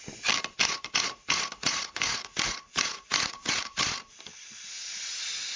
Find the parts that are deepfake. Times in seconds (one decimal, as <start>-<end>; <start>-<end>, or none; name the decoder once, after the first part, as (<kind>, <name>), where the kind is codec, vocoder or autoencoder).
0.6-4.0 (vocoder, Vocos)

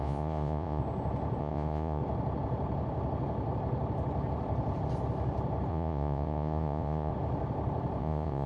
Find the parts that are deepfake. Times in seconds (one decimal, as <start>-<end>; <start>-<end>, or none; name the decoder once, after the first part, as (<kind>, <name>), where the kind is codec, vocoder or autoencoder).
0.0-0.8 (vocoder, Vocos); 1.4-2.0; 5.7-7.1; 8.0-8.5